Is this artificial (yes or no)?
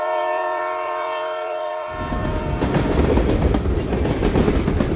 yes